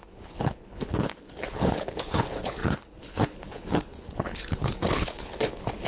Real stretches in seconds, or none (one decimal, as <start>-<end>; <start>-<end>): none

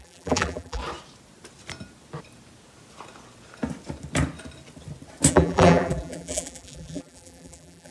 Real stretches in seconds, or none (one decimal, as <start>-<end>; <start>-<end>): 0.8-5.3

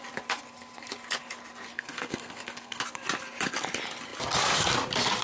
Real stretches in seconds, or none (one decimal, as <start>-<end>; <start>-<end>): 0.0-1.7; 2.8-5.2

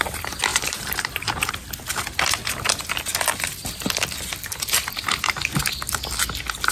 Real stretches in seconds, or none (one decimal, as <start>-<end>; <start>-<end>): 0.0-0.5; 1.5-6.7

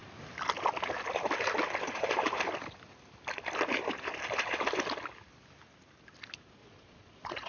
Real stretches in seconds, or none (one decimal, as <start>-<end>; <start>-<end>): 0.0-6.6

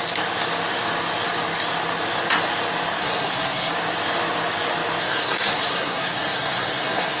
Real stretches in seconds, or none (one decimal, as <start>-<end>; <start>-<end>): 0.0-3.0; 3.7-5.0

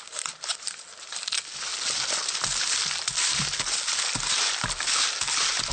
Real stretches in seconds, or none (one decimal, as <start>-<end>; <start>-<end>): 0.0-5.7

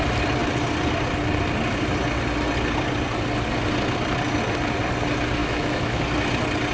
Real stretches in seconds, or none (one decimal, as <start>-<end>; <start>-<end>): 0.0-5.4; 6.0-6.7